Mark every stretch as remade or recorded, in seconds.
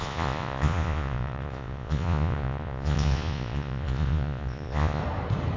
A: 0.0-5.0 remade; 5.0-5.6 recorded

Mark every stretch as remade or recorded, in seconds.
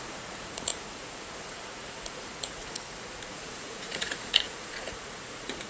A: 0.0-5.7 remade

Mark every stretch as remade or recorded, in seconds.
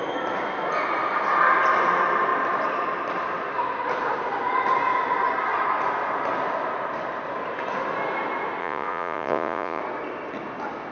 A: 0.0-8.6 recorded; 8.6-9.8 remade; 9.8-10.9 recorded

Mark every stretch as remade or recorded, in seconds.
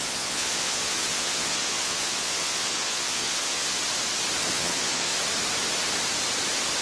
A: 0.0-3.8 remade; 3.8-4.5 recorded; 4.5-5.1 remade; 5.1-6.8 recorded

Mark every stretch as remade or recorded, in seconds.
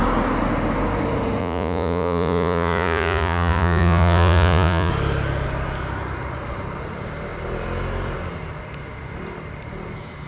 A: 0.0-1.4 recorded; 1.4-4.9 remade; 4.9-10.3 recorded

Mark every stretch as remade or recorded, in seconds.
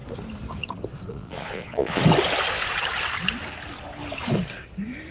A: 0.0-1.1 recorded; 1.1-2.0 remade; 2.0-5.1 recorded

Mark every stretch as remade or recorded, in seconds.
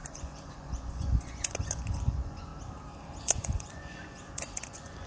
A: 0.0-2.5 remade; 2.5-3.2 recorded; 3.2-5.1 remade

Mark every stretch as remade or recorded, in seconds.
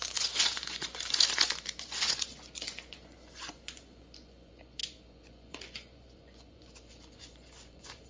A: 0.0-8.1 remade